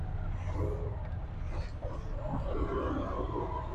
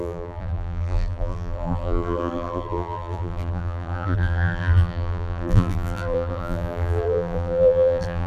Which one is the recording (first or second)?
first